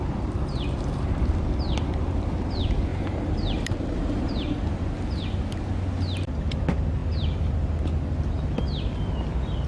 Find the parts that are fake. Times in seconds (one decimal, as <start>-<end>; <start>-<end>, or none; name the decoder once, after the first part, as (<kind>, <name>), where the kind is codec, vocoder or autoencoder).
2.9-4.8 (vocoder, BigVGAN v2)